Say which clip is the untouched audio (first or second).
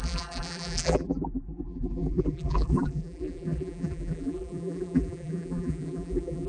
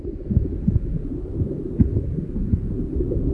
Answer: second